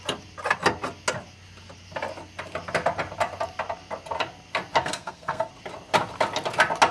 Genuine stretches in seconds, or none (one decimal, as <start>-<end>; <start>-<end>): 0.0-4.8; 5.5-6.9